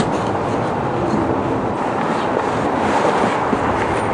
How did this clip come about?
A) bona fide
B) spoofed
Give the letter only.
A